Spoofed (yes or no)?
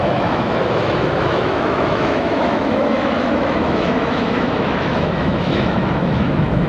yes